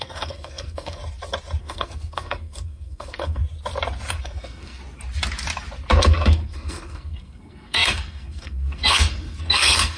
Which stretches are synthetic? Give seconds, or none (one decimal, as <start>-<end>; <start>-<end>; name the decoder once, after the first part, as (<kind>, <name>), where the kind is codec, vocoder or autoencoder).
0.0-1.0 (codec, SNAC); 1.6-3.4; 4.1-4.8; 6.0-10.0